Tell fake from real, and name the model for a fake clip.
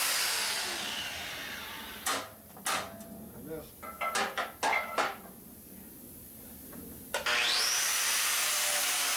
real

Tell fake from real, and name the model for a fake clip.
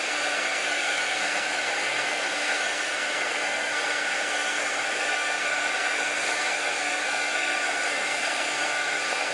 fake, codec, SNAC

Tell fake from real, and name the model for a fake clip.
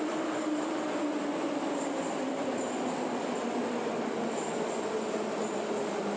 real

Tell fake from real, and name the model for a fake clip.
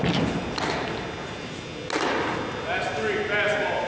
real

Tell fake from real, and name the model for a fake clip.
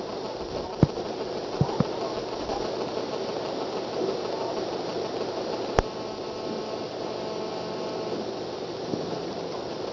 real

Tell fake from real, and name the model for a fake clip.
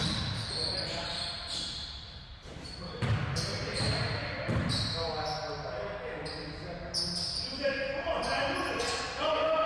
real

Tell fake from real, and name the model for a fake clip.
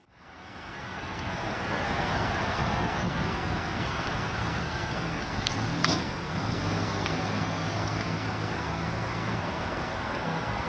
fake, codec, SNAC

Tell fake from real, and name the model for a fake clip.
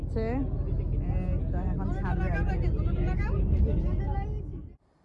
real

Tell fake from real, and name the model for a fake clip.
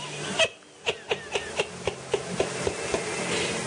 real